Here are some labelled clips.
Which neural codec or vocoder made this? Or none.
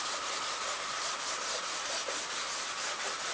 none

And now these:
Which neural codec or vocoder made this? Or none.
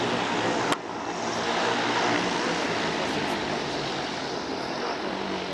none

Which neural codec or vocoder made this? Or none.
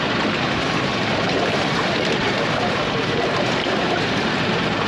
vocoder, BigVGAN v2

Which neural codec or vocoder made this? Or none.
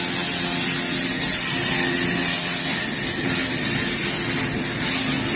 none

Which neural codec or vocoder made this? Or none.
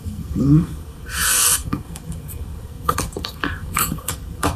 codec, SNAC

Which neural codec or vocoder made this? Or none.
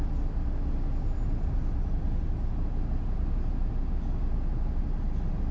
none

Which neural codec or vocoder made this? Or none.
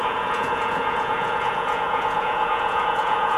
vocoder, Vocos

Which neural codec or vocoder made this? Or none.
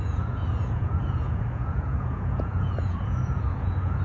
vocoder, Vocos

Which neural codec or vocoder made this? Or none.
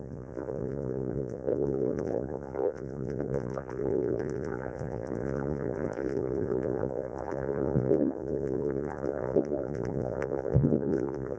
vocoder, Vocos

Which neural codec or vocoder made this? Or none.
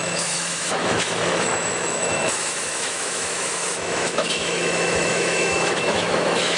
autoencoder, DAC-VAE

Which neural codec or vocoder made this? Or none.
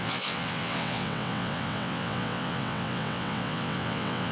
vocoder, WaveNeXt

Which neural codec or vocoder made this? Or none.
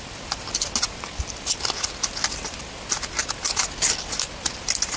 none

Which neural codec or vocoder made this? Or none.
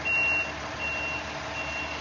none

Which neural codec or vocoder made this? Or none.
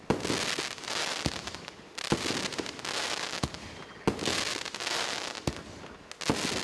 none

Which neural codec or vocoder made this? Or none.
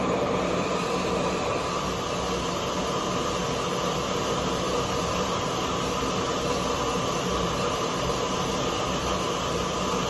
none